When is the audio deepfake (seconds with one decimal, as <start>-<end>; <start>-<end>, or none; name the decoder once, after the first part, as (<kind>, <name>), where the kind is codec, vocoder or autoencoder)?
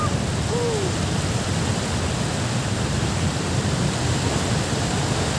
1.0-4.2 (vocoder, BigVGAN v2)